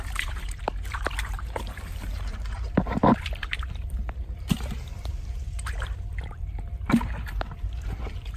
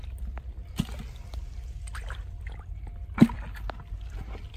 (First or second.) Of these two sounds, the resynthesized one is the first